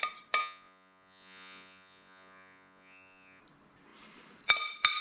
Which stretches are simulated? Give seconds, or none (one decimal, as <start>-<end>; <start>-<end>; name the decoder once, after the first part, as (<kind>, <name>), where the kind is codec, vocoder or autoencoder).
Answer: 0.4-3.4 (vocoder, Vocos)